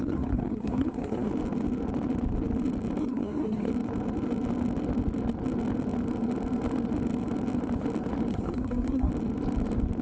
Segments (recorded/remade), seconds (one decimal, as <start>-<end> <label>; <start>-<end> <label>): 0.0-1.3 remade; 1.3-3.0 recorded; 3.0-3.7 remade; 3.7-8.3 recorded; 8.3-9.1 remade; 9.1-10.0 recorded